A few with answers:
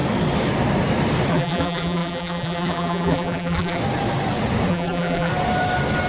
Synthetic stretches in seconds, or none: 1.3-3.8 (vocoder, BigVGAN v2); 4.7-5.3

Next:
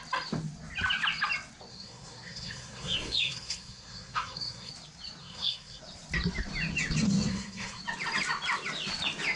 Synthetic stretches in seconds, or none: 1.7-4.7 (codec, SNAC); 5.2-5.8; 7.3-7.8